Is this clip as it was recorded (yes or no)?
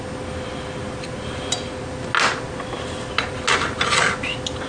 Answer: yes